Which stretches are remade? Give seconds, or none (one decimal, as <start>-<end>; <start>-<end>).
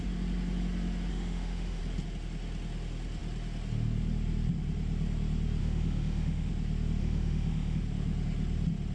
1.1-1.8; 5.6-6.5; 7.0-7.8